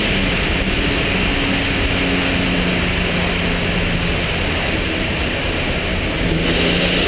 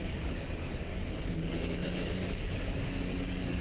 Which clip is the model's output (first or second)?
second